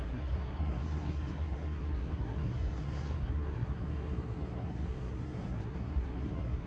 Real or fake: fake